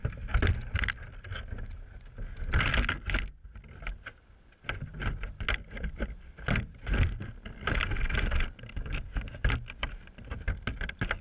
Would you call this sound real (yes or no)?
yes